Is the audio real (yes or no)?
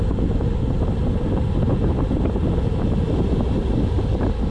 yes